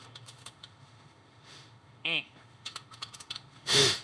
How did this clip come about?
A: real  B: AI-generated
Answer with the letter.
B